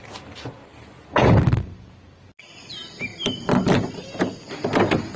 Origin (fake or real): real